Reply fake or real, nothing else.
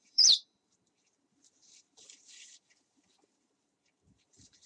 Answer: fake